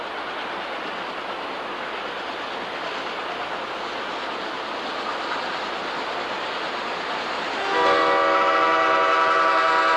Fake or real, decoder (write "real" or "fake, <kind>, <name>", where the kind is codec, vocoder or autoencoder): real